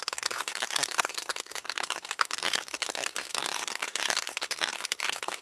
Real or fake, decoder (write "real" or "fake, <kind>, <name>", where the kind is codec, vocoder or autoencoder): fake, codec, SNAC